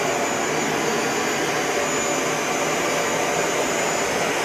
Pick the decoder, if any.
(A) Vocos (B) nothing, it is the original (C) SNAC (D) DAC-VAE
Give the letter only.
B